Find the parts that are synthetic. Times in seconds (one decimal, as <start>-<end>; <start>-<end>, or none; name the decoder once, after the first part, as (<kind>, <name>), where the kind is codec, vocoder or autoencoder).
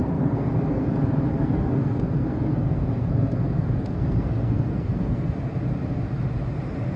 0.0-0.9 (codec, SNAC); 1.3-5.5